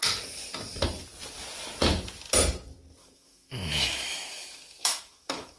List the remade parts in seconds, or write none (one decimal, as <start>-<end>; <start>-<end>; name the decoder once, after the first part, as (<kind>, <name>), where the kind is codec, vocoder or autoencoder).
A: 3.0-5.6 (autoencoder, DAC-VAE)